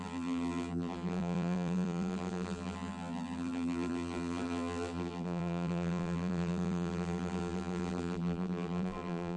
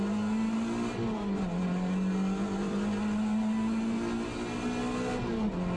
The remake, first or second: first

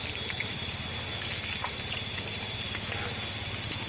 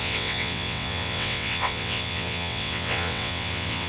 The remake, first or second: second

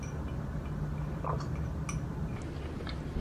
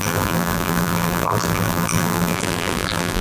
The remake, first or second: second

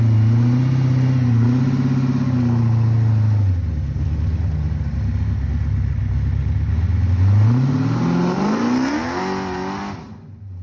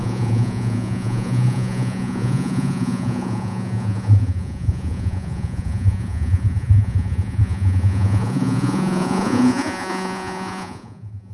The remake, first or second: second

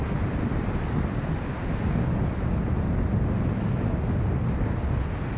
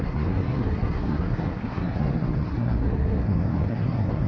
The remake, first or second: second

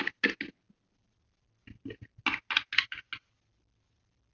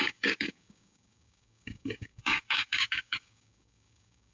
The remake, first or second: second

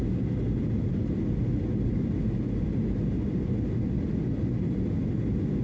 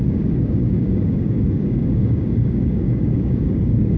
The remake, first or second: second